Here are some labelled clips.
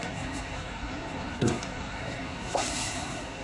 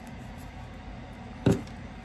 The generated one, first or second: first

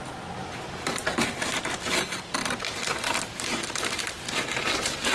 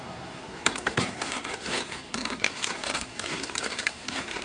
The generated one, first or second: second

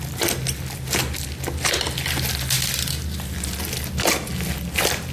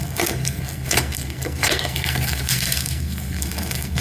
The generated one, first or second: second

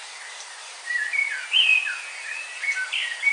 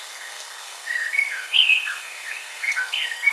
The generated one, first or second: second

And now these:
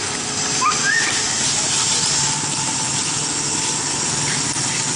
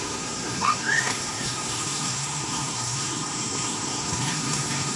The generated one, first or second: second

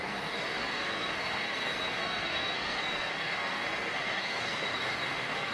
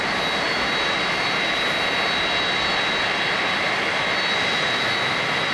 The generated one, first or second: first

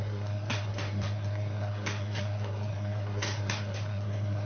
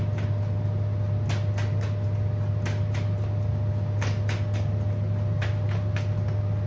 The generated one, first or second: first